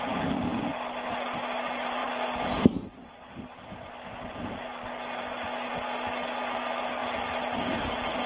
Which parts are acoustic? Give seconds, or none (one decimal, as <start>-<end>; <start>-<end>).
0.0-8.3